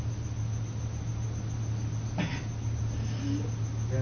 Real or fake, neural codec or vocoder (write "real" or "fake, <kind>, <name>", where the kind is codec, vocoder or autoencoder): real